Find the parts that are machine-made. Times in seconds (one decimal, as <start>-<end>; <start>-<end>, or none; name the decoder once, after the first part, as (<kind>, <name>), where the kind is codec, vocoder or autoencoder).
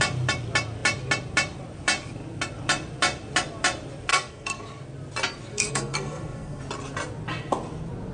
4.1-4.6 (codec, SNAC); 5.5-6.6